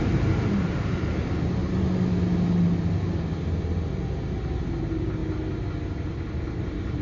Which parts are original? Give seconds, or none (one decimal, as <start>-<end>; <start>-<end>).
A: 1.6-4.6; 5.2-5.9